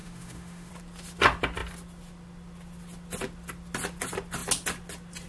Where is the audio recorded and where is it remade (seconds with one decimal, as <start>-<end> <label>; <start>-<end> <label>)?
0.0-0.7 remade; 0.7-5.3 recorded

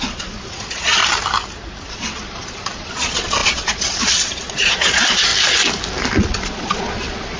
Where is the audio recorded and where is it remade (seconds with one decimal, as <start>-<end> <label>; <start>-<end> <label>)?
0.0-1.0 remade; 1.0-1.9 recorded; 1.9-5.3 remade; 5.3-6.2 recorded; 6.2-7.4 remade